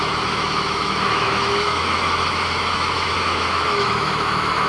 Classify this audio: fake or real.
fake